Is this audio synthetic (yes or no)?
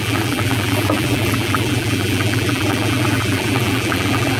yes